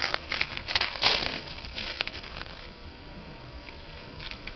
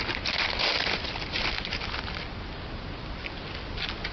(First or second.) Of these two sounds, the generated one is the first